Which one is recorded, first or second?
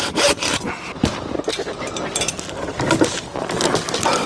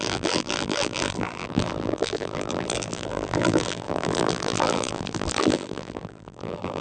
first